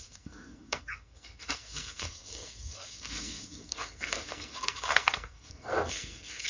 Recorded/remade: remade